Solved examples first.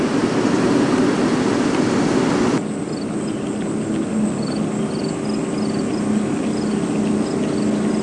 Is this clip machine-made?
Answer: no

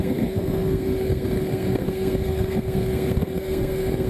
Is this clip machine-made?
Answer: yes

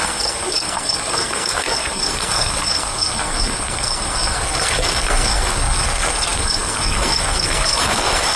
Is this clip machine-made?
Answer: yes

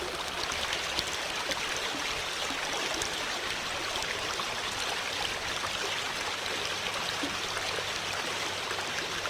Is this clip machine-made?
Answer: no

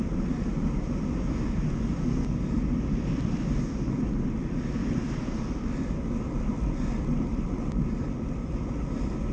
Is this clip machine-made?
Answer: no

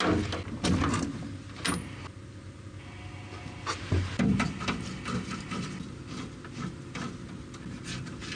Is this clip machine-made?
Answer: no